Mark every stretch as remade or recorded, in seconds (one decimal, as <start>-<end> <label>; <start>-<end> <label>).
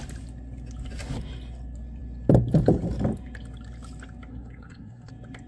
0.0-4.3 recorded; 4.3-5.1 remade; 5.1-5.5 recorded